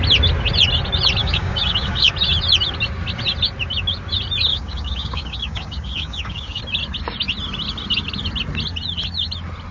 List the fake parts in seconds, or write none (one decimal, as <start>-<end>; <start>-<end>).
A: 1.2-2.1; 4.5-6.6